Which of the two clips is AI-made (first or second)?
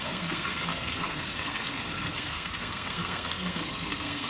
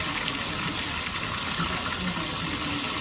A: first